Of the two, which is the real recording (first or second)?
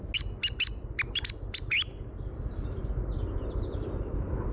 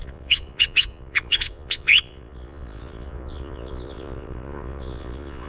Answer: first